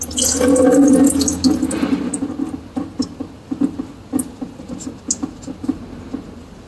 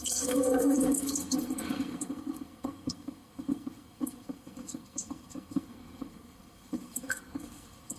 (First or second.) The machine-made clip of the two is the second